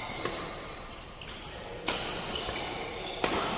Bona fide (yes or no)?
yes